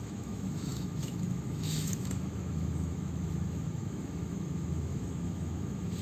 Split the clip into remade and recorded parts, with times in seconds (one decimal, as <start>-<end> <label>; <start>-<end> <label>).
0.0-6.0 remade